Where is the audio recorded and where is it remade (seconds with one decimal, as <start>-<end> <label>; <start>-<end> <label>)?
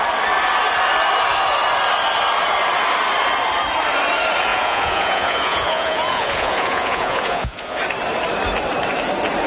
0.0-4.5 recorded; 4.5-7.8 remade; 7.8-9.5 recorded